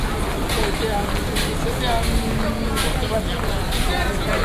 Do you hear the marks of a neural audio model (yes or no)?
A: no